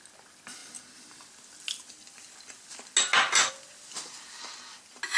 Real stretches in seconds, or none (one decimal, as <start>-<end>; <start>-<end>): 0.0-5.2